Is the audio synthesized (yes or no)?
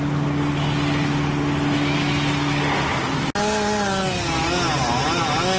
no